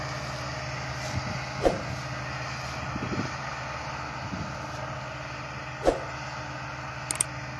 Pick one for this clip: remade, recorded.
recorded